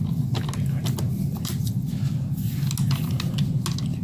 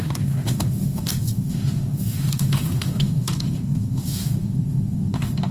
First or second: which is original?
first